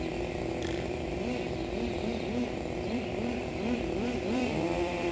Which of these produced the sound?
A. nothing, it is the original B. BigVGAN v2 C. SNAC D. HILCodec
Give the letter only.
B